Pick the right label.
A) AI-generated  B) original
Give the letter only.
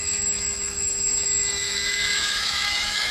A